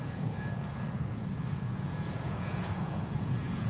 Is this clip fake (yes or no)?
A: yes